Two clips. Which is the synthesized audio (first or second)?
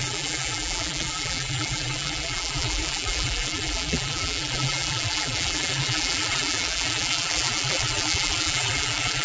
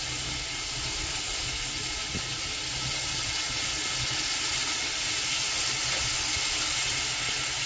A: first